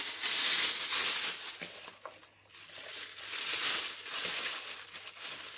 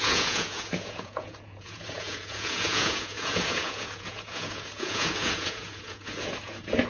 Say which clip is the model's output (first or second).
second